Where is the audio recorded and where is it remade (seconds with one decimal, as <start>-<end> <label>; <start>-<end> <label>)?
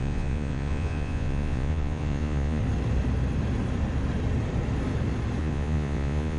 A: 0.0-2.6 remade; 2.6-5.4 recorded; 5.4-6.4 remade